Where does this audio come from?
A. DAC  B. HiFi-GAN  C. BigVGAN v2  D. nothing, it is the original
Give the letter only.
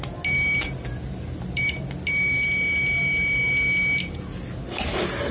D